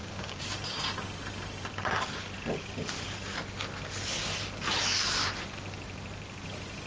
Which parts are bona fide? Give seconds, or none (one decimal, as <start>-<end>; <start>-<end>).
0.5-6.9